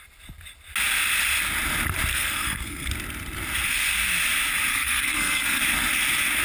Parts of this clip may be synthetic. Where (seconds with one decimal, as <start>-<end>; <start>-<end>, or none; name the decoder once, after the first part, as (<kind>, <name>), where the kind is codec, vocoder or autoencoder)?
2.1-2.9 (codec, SNAC); 4.7-5.6